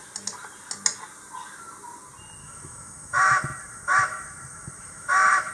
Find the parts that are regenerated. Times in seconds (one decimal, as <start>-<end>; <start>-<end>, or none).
2.4-5.5

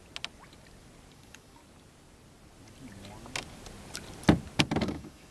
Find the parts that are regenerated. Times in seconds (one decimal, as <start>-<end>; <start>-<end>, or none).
1.1-1.6; 4.8-5.3

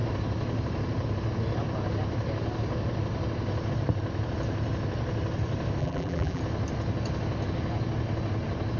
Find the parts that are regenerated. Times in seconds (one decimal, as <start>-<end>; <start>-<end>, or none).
5.8-6.4